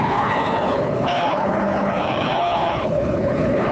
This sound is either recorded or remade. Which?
remade